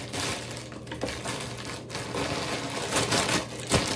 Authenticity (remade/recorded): recorded